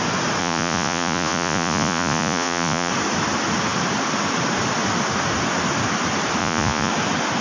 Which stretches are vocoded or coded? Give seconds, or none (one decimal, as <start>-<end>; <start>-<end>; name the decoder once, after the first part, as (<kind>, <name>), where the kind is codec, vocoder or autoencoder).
0.4-2.9 (vocoder, Vocos); 6.4-6.9